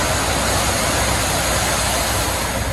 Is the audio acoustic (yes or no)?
yes